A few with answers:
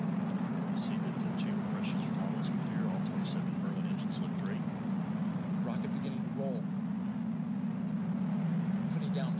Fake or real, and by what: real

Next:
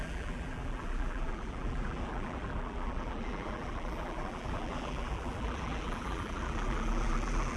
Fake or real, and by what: fake, vocoder, BigVGAN v2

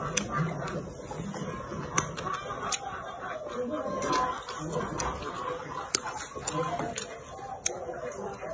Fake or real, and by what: real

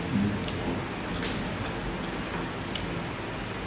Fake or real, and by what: real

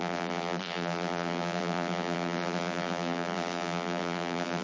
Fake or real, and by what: fake, vocoder, BigVGAN v2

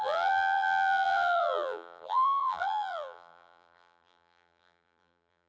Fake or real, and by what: fake, vocoder, BigVGAN v2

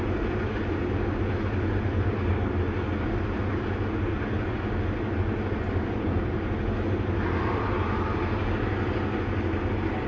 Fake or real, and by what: real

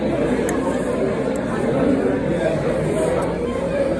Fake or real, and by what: real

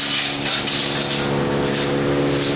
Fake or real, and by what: real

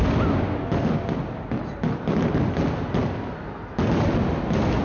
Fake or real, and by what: real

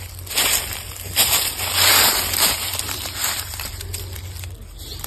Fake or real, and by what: fake, vocoder, BigVGAN v2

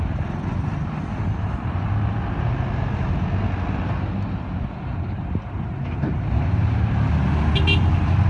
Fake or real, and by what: real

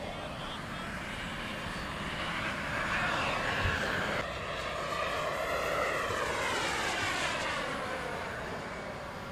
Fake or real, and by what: real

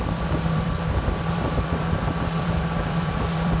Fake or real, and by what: fake, vocoder, BigVGAN v2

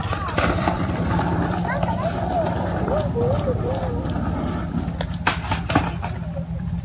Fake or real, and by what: fake, vocoder, BigVGAN v2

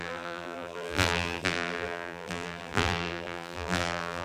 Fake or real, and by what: fake, vocoder, BigVGAN v2